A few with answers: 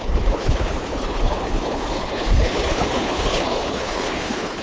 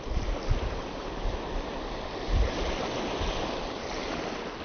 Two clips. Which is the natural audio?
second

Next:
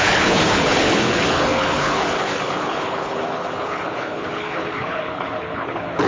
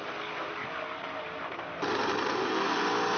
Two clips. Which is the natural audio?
second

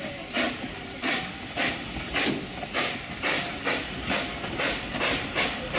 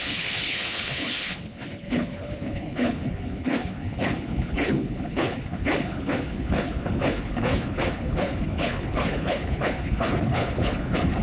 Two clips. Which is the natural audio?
first